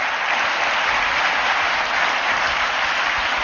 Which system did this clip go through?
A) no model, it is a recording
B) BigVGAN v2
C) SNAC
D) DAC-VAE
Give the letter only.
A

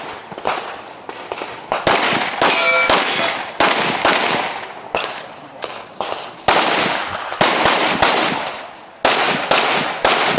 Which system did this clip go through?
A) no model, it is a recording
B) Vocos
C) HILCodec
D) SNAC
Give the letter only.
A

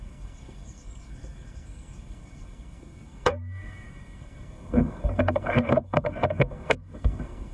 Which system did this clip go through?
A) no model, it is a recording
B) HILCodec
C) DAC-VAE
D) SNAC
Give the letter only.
D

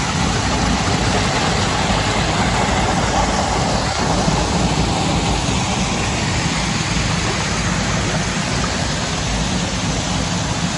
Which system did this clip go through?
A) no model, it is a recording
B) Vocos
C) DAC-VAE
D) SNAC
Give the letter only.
A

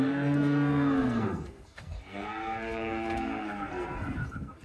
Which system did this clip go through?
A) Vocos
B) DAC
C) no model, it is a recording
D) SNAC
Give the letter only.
D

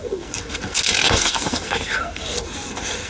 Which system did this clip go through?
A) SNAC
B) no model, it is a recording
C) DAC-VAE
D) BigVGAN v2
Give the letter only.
A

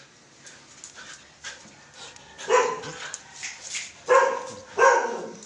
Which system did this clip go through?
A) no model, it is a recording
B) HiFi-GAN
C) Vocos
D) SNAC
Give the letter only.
A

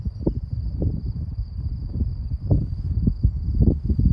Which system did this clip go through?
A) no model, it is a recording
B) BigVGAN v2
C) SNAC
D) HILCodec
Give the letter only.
A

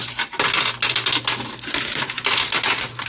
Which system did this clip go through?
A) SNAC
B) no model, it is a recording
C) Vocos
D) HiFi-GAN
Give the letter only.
B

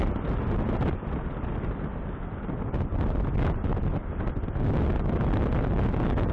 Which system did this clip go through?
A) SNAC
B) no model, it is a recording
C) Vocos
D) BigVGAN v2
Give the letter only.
B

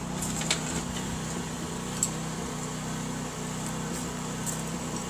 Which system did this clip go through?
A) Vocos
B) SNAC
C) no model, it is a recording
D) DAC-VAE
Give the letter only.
C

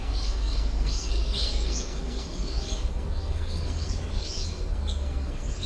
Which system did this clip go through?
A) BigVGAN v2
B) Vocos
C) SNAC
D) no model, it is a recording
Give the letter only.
C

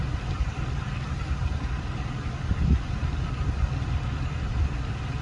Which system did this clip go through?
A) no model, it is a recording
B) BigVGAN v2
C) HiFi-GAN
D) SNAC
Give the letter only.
A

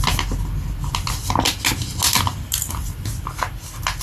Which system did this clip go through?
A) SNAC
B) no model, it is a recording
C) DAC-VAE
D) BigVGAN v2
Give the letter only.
B